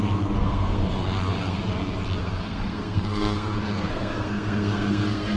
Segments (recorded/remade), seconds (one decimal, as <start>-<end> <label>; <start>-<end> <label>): 0.0-0.4 recorded; 0.4-1.6 remade; 1.6-2.2 recorded; 2.2-5.4 remade